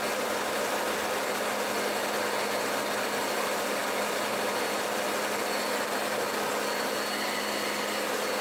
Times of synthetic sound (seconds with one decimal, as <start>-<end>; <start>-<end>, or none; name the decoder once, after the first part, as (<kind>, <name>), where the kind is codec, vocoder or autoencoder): none